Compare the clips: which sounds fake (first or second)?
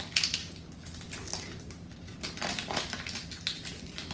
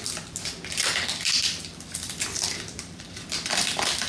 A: second